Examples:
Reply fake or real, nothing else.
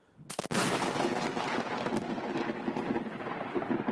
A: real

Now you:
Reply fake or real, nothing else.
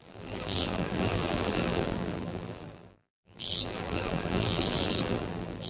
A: fake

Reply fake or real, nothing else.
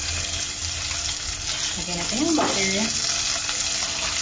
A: real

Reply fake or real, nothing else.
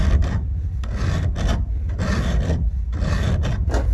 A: real